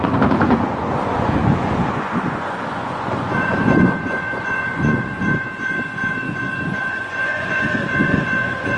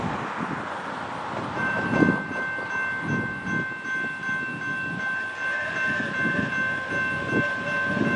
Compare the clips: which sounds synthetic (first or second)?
first